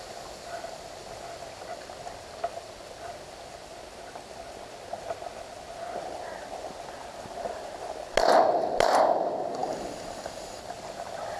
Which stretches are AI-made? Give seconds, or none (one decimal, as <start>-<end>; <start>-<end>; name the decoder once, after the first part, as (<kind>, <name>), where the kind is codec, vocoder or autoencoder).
9.6-10.6 (vocoder, BigVGAN v2)